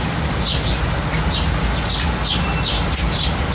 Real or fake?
real